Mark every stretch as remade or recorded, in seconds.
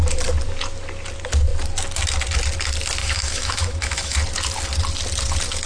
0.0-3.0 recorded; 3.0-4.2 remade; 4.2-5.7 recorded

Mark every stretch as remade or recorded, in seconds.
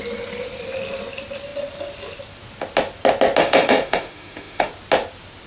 0.0-3.4 recorded; 3.4-4.7 remade; 4.7-5.5 recorded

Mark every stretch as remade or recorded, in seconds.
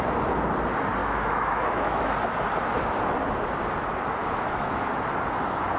0.0-1.0 recorded; 1.0-2.1 remade; 2.1-4.2 recorded; 4.2-4.9 remade; 4.9-5.8 recorded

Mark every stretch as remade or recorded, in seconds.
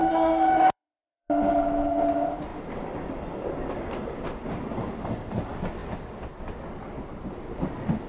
0.0-1.3 remade; 1.3-8.1 recorded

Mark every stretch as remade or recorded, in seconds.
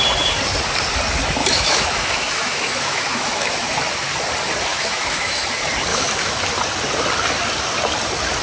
0.0-1.4 recorded; 1.4-3.8 remade; 3.8-4.7 recorded; 4.7-5.4 remade; 5.4-5.9 recorded; 5.9-6.4 remade; 6.4-8.4 recorded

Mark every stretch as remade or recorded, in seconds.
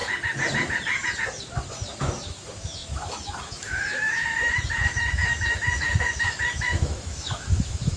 0.0-2.0 recorded; 2.0-8.0 remade